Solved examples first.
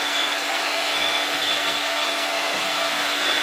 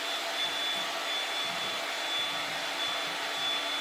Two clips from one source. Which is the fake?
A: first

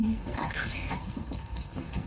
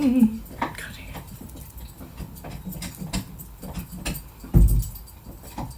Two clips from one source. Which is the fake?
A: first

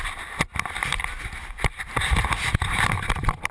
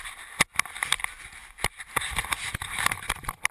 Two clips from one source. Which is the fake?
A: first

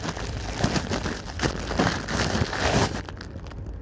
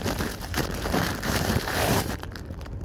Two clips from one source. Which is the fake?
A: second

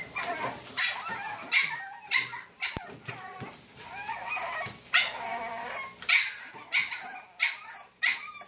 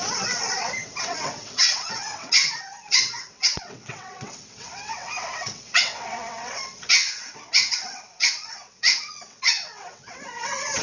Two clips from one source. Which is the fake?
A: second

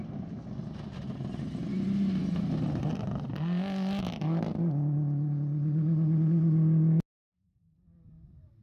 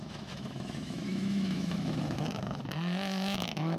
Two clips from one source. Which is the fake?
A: second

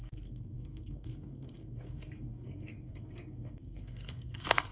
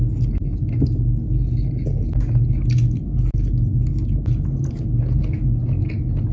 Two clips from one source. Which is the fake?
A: first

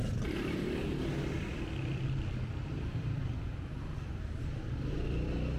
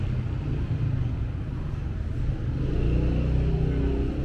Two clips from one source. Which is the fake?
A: first